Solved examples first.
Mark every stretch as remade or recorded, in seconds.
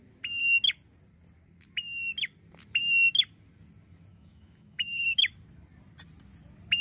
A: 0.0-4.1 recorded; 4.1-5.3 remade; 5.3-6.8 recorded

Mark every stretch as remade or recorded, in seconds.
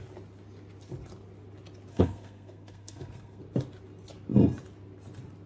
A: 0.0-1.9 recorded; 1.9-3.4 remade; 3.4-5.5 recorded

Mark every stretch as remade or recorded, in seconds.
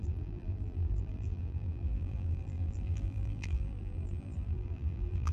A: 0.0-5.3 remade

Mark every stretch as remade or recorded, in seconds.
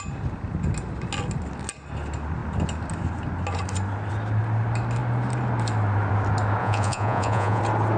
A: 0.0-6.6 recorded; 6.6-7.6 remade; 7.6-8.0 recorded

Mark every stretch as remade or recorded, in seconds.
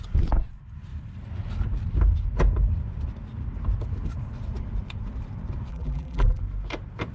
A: 0.0-5.7 recorded; 5.7-6.4 remade; 6.4-7.1 recorded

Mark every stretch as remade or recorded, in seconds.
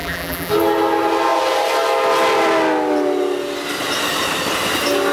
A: 0.0-0.5 remade; 0.5-5.1 recorded